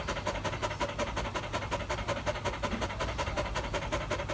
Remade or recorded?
recorded